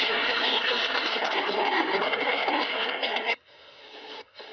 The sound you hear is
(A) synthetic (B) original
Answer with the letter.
A